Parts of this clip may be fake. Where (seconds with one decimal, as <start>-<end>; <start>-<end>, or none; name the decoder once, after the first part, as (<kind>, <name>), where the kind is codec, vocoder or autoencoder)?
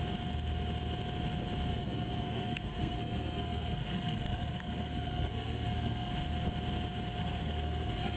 1.7-6.1 (codec, SNAC); 7.2-8.2